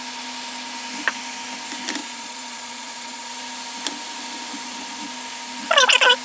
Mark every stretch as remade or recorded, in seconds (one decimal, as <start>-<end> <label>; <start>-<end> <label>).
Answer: 0.0-2.0 recorded; 2.0-3.3 remade; 3.3-6.2 recorded